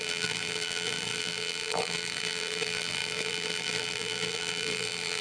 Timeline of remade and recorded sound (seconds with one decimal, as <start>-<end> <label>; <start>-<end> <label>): 0.0-5.2 remade